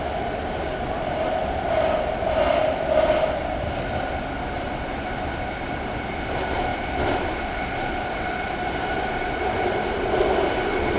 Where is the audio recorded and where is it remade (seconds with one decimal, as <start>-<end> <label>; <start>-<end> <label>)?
0.0-11.0 recorded